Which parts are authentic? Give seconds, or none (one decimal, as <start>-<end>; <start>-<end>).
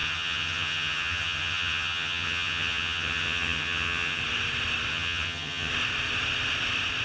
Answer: 4.2-4.9; 5.7-7.0